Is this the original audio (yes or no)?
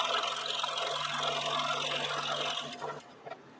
yes